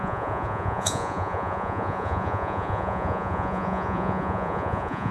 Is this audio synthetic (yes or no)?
yes